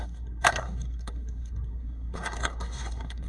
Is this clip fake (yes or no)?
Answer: yes